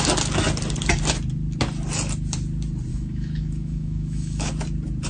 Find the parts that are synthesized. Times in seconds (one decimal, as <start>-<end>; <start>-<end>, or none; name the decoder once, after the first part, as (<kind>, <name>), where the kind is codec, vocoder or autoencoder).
2.9-4.5 (autoencoder, DAC-VAE)